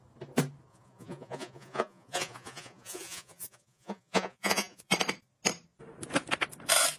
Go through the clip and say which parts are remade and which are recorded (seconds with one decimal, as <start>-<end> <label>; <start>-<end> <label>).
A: 0.0-0.7 recorded; 0.7-4.9 remade; 4.9-7.0 recorded